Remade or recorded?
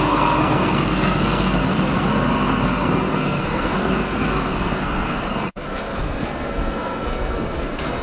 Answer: remade